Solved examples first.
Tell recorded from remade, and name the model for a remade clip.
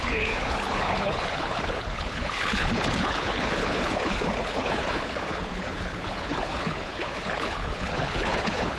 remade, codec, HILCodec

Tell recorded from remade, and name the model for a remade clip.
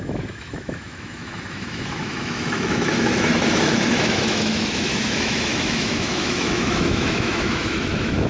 remade, autoencoder, DAC-VAE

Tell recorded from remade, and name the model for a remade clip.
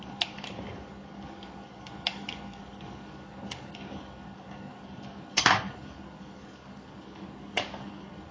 remade, codec, DAC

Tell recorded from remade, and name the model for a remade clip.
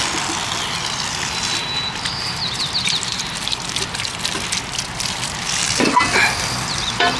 recorded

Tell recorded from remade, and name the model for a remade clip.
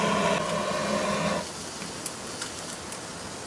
recorded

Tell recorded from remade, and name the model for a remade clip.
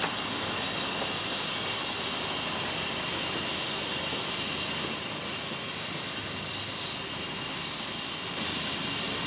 recorded